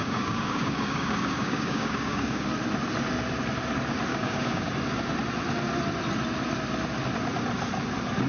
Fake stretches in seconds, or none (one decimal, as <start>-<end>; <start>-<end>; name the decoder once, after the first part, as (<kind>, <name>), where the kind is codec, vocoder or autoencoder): 0.0-2.5 (codec, DAC); 4.1-4.7